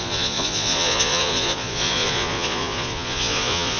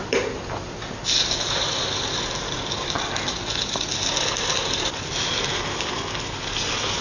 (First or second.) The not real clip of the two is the first